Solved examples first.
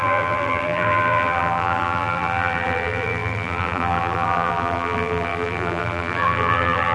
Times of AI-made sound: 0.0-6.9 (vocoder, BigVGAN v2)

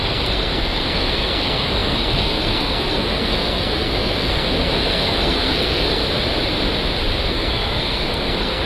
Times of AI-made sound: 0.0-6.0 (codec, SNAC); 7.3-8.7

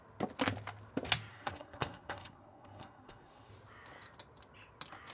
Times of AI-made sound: 1.3-3.5 (codec, SNAC)

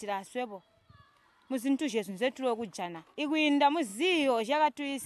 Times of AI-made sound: none

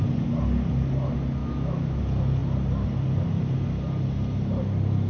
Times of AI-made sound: 1.4-2.0 (autoencoder, DAC-VAE)

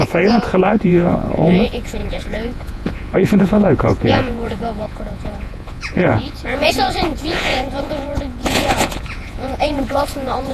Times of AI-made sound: 0.0-10.5 (vocoder, Vocos)